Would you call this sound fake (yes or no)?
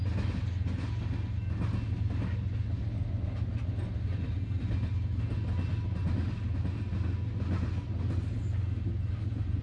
no